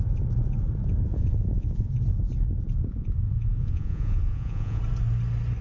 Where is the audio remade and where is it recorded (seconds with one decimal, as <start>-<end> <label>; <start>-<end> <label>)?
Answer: 0.0-1.1 recorded; 1.1-1.9 remade; 1.9-2.9 recorded; 2.9-4.8 remade; 4.8-5.6 recorded